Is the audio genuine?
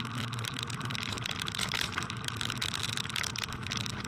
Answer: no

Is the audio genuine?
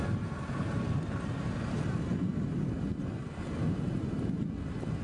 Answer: yes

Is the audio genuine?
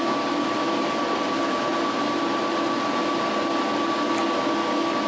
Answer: yes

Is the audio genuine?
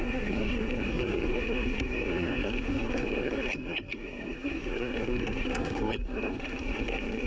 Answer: no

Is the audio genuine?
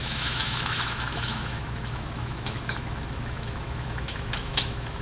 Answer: no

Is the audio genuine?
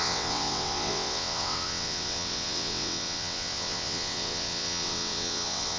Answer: no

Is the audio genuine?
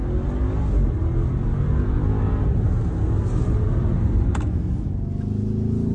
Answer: yes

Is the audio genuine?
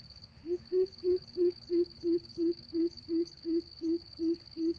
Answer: no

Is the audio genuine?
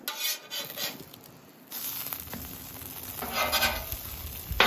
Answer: yes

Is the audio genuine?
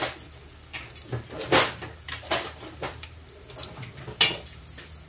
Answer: yes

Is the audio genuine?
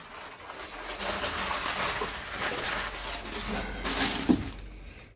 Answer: yes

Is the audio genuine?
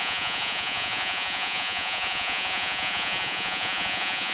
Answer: no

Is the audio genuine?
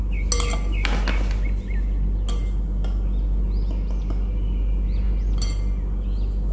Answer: yes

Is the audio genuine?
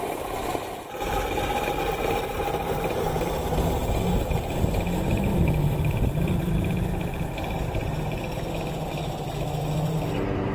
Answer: yes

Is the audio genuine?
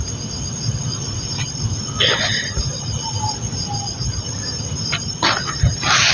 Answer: no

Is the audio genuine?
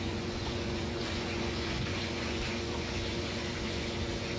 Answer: no